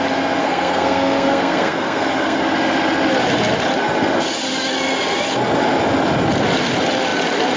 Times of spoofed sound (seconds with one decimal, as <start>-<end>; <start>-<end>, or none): 0.4-2.4